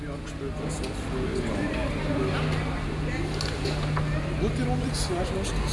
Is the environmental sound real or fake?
real